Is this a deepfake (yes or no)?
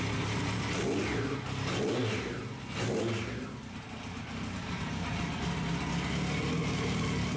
no